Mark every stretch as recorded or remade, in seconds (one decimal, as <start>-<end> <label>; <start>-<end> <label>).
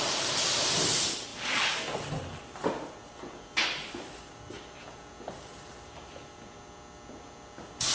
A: 0.0-7.9 recorded